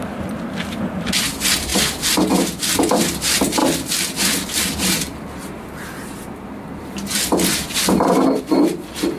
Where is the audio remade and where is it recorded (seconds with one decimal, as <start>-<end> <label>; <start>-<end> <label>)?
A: 0.0-1.7 recorded; 1.7-2.3 remade; 2.3-9.2 recorded